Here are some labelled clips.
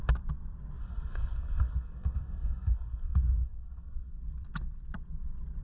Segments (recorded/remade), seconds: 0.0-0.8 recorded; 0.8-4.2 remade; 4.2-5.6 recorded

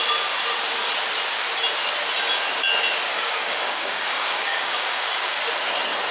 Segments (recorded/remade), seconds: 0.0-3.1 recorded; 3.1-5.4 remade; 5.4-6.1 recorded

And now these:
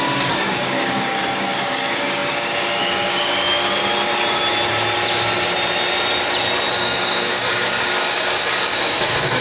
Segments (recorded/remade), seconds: 0.0-3.8 remade; 3.8-6.7 recorded; 6.7-9.4 remade

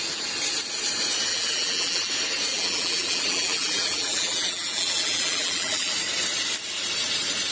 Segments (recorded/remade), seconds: 0.0-1.3 recorded; 1.3-2.1 remade; 2.1-2.5 recorded; 2.5-5.9 remade; 5.9-7.5 recorded